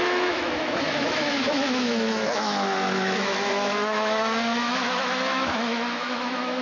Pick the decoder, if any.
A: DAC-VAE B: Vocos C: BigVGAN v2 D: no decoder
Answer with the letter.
A